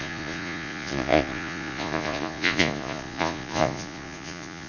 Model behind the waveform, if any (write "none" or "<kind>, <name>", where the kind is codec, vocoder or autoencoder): vocoder, Vocos